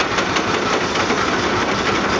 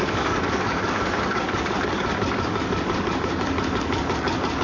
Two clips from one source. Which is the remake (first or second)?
second